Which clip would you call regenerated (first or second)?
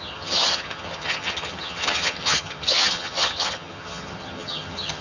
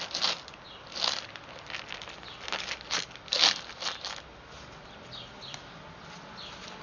first